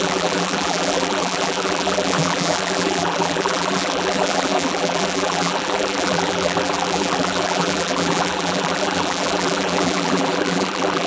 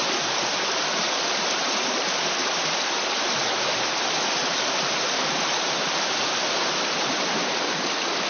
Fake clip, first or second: first